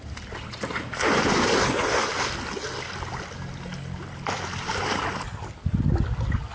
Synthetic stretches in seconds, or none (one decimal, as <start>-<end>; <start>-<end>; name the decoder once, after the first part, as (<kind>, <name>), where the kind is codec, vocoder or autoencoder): none